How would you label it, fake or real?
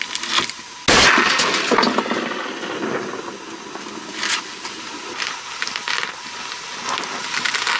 real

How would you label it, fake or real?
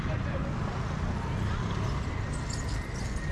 real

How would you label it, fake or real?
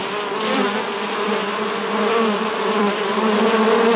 fake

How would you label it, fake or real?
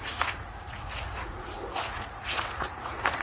fake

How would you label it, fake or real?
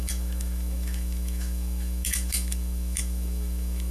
fake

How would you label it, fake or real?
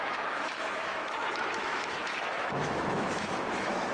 fake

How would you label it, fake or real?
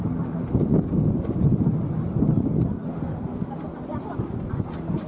real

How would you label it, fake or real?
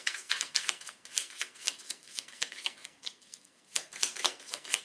fake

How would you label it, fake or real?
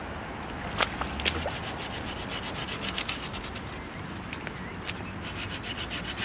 real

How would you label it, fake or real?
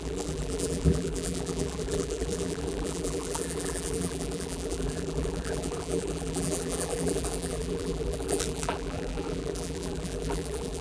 fake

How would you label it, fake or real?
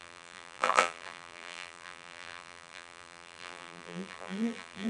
fake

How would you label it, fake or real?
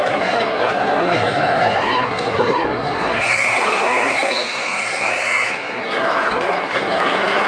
fake